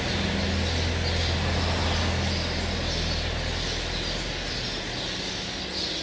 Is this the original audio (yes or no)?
yes